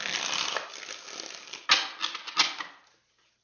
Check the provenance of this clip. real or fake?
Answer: real